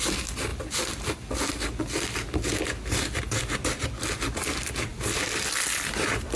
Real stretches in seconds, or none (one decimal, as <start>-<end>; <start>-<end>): 0.0-6.4